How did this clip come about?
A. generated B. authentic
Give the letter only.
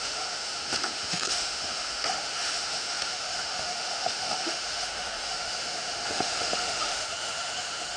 A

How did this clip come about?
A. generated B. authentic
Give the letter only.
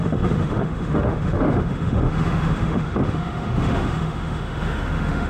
A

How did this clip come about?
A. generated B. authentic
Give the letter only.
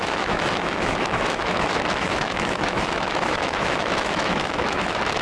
A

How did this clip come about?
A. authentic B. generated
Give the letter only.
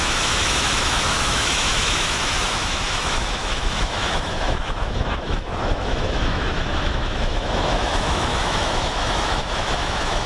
B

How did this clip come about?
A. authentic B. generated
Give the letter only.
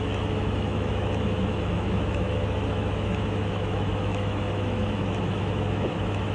B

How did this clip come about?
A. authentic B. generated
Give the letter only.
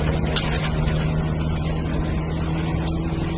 A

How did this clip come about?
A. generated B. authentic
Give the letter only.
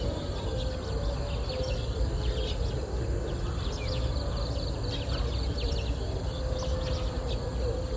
B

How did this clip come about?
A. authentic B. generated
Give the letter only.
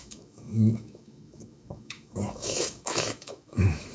B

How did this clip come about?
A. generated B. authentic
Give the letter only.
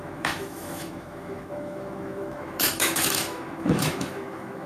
A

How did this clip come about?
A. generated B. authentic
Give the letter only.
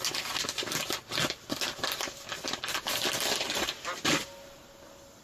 B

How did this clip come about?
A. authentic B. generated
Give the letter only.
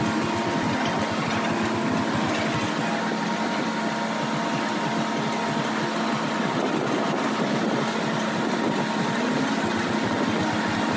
A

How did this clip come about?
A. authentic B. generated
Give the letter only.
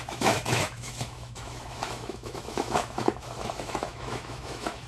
B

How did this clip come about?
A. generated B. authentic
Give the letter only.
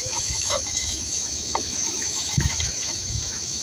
A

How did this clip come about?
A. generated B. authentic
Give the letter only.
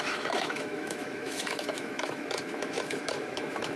A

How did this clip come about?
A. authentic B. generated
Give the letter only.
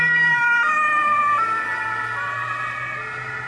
A